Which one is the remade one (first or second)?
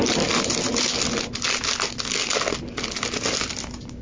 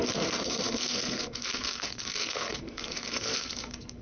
second